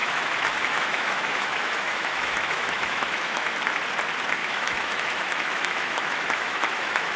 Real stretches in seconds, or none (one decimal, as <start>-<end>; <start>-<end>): 3.5-4.4